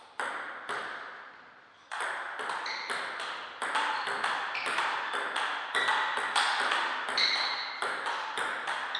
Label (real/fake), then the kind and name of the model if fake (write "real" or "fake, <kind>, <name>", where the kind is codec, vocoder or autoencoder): real